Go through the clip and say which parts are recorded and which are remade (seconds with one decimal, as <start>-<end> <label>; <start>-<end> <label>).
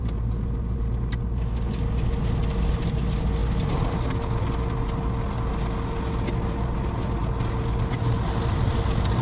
0.0-9.2 recorded